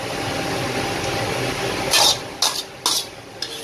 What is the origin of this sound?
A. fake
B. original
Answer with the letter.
B